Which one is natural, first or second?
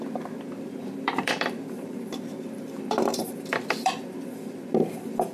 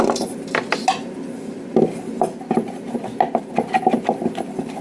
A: second